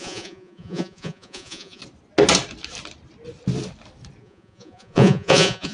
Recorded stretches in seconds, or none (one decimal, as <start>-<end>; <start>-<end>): 1.8-4.2